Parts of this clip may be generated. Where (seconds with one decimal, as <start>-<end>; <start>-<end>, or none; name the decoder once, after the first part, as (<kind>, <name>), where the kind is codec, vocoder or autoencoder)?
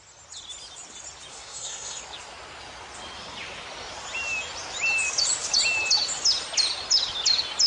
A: 1.3-2.0 (codec, SNAC)